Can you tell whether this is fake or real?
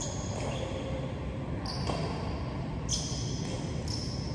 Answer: real